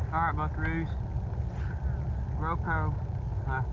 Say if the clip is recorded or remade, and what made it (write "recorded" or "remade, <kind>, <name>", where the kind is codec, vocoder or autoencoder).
recorded